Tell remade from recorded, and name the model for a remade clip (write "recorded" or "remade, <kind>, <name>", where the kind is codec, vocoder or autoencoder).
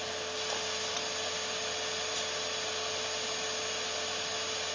recorded